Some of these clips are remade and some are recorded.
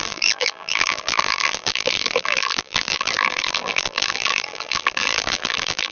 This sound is remade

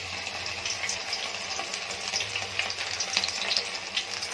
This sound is recorded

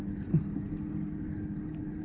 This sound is recorded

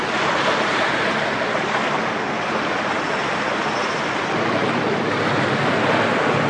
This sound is recorded